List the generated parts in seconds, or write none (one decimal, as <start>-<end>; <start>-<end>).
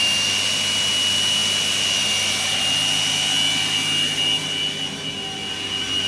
none